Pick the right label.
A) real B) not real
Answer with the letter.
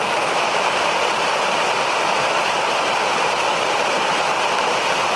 A